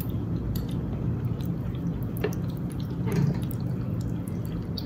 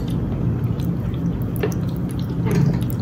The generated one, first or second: first